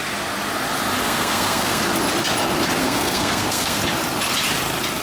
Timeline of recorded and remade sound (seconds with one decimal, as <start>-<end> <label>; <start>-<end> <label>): 0.0-1.0 recorded; 1.0-1.8 remade; 1.8-2.8 recorded; 2.8-3.8 remade; 3.8-5.0 recorded

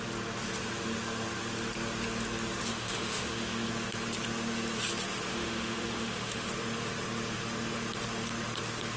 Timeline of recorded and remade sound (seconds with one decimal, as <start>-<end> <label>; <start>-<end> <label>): 0.0-2.7 recorded; 2.7-3.7 remade; 3.7-5.3 recorded; 5.3-6.5 remade; 6.5-9.0 recorded